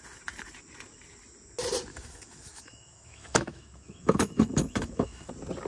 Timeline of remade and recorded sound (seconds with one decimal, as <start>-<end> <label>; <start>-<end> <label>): 0.0-1.9 recorded; 1.9-5.3 remade; 5.3-5.7 recorded